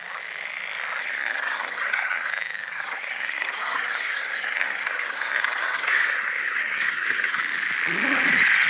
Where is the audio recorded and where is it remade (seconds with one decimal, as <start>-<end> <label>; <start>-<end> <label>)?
0.0-1.0 recorded; 1.0-2.3 remade; 2.3-2.7 recorded; 2.7-7.4 remade; 7.4-8.7 recorded